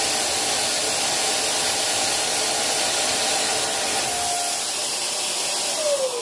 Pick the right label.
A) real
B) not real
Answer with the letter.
A